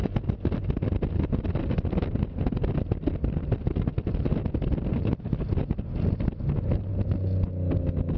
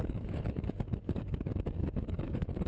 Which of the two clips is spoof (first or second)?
second